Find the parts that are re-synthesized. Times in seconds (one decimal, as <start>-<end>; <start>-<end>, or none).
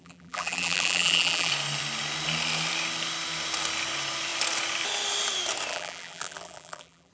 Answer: 0.0-1.5; 5.7-7.1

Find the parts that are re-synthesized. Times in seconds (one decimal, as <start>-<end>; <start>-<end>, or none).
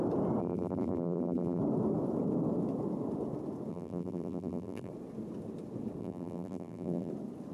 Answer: 0.4-1.6; 3.7-4.9; 6.0-7.1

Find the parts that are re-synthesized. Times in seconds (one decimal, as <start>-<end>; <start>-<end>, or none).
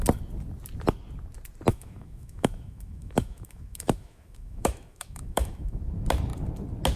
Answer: 1.7-5.8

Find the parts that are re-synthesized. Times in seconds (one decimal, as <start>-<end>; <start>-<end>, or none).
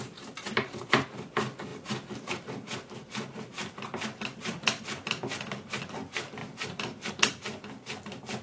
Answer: 0.4-0.9; 6.4-7.1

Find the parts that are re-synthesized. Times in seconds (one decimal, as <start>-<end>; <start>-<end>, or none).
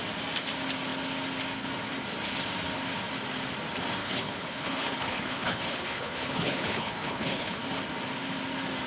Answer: 4.0-7.6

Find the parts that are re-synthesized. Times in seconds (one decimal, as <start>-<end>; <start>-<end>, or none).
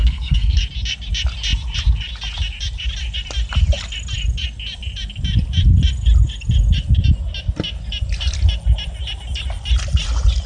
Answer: 0.0-0.6